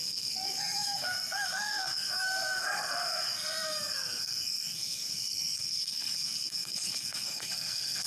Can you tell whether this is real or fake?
fake